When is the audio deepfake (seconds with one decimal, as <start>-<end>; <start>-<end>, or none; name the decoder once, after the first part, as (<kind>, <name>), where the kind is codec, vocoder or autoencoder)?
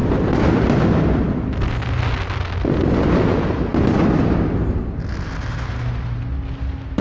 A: 3.3-3.7 (vocoder, Vocos)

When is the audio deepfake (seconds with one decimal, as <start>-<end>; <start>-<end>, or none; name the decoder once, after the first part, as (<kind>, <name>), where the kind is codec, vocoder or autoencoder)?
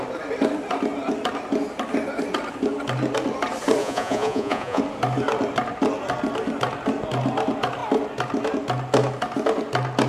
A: 3.8-4.8 (vocoder, Vocos)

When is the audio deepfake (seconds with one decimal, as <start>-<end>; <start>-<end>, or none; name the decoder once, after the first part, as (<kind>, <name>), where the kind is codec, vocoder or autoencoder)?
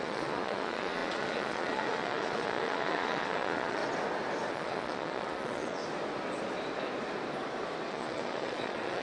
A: 0.0-3.8 (vocoder, Vocos); 4.5-5.8; 7.9-9.0